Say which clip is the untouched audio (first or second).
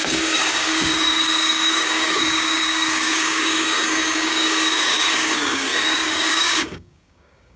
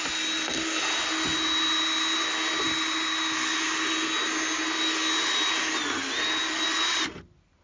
second